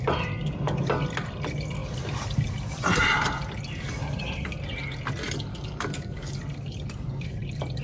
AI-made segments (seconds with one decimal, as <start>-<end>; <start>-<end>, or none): 5.5-6.4

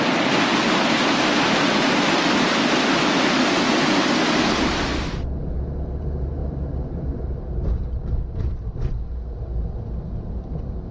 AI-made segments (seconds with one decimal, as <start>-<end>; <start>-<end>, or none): 0.5-1.7; 6.4-8.2